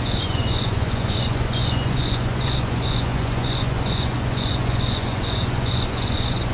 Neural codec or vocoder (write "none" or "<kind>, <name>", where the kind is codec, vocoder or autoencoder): vocoder, Vocos